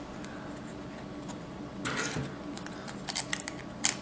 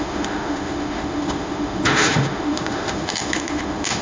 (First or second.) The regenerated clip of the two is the second